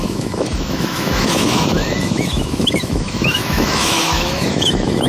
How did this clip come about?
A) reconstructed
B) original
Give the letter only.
A